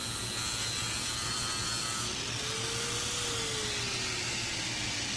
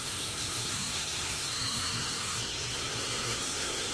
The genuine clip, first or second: first